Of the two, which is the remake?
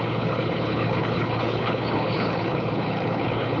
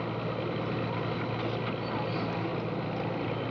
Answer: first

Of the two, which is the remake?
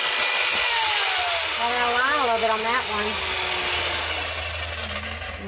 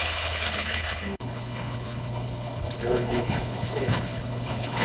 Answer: second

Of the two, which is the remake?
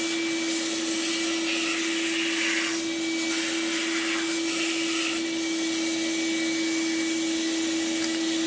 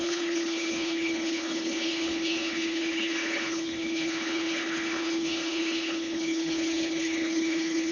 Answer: second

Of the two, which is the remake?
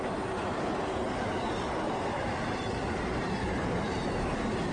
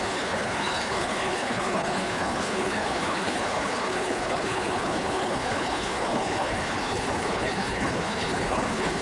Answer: second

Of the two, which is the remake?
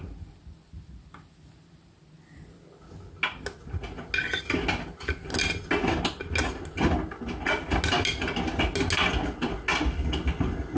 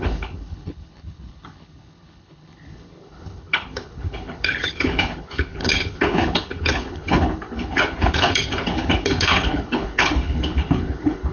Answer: second